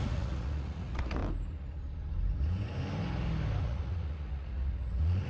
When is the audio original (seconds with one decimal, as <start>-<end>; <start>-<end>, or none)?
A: 1.2-3.6